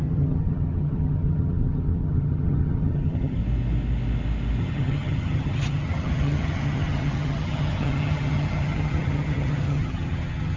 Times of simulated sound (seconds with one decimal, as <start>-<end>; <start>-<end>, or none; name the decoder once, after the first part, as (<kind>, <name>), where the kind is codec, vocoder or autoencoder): 0.0-3.4 (vocoder, HiFi-GAN); 4.6-10.6